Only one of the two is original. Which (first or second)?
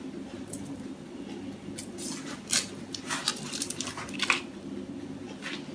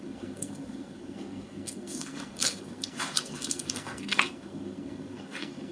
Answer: first